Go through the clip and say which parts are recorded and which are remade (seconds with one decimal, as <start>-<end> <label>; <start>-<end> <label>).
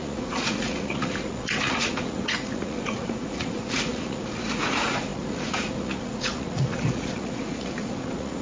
0.0-8.4 remade